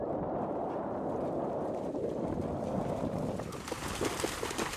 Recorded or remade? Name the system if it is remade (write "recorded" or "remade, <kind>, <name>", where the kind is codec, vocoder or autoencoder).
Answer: recorded